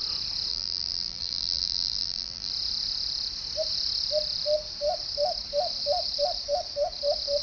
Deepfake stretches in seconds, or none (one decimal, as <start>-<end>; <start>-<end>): 0.5-2.5